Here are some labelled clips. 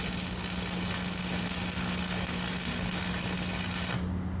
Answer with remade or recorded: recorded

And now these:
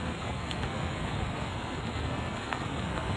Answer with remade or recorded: remade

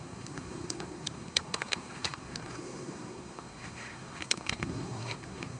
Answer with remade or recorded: remade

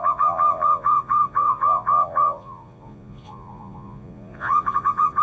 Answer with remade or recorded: remade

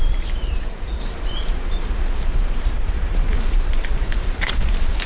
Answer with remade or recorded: remade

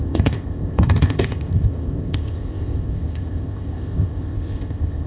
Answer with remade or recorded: remade